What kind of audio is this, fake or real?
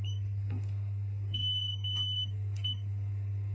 fake